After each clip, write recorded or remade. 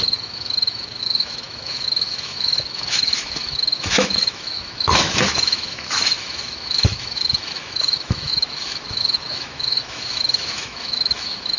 remade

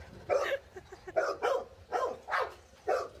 recorded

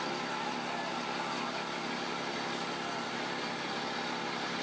recorded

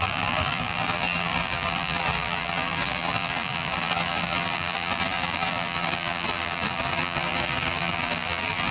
remade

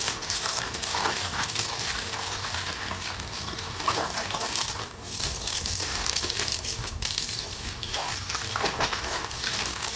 remade